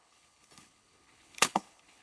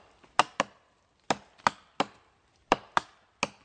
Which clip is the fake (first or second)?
first